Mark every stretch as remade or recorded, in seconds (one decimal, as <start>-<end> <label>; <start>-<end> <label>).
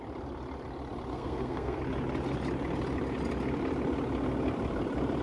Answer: 0.0-1.1 recorded; 1.1-1.8 remade; 1.8-5.2 recorded